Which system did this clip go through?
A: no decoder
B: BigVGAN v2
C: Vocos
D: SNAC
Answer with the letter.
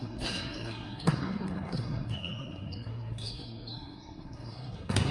D